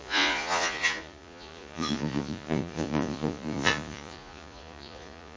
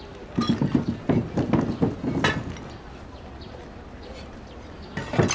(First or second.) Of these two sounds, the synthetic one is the first